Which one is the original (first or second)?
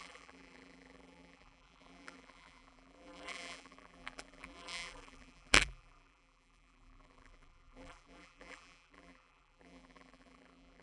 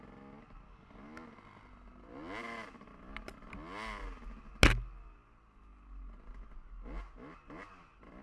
second